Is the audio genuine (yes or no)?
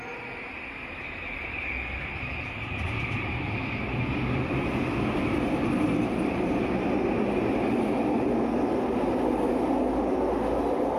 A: yes